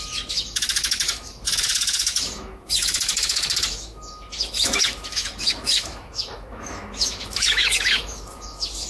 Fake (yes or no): yes